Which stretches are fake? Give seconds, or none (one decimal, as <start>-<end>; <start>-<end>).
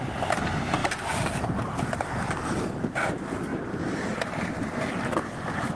0.8-1.7